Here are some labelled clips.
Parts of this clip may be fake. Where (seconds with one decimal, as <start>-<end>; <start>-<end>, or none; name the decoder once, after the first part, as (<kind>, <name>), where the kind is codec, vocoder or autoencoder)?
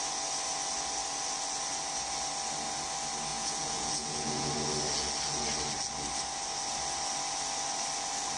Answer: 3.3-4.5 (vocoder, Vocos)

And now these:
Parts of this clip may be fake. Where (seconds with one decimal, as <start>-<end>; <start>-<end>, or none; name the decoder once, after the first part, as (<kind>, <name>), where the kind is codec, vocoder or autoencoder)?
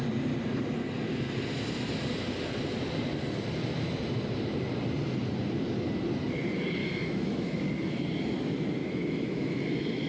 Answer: 6.8-7.6 (autoencoder, DAC-VAE); 8.8-10.1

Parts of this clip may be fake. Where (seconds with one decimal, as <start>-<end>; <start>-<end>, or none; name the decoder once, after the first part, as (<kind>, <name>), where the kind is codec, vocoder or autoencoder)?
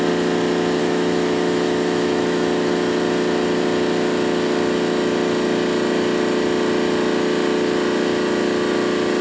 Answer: 0.8-2.7 (autoencoder, DAC-VAE)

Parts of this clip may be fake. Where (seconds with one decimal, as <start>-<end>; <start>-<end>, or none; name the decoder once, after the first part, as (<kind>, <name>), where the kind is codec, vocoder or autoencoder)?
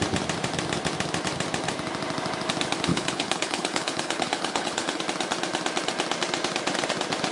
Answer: 2.9-5.0 (codec, HILCodec)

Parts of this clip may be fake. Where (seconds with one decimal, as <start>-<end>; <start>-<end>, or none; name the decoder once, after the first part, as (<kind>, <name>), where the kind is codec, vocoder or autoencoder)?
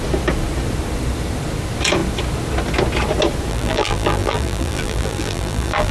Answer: 3.5-5.9 (vocoder, BigVGAN v2)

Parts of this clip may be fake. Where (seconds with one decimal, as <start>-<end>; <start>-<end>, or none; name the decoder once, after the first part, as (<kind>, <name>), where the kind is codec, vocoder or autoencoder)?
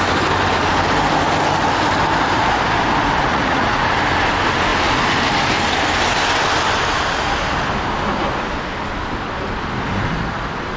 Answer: 3.3-3.8 (vocoder, Vocos)